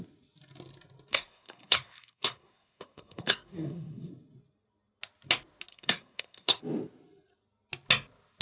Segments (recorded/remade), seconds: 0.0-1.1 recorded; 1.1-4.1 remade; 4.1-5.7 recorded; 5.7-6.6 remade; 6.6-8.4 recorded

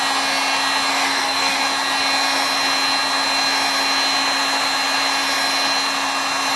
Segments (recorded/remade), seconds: 0.0-0.9 recorded; 0.9-1.6 remade; 1.6-6.6 recorded

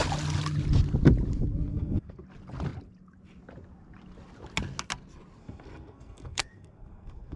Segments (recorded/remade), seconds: 0.0-1.7 recorded; 1.7-2.2 remade; 2.2-5.4 recorded; 5.4-7.4 remade